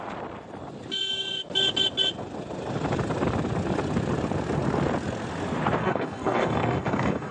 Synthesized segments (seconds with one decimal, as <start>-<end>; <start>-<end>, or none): 5.8-7.3